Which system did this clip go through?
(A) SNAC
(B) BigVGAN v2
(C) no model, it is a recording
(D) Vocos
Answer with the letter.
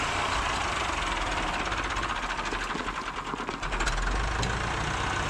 C